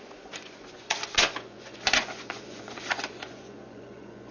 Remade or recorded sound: remade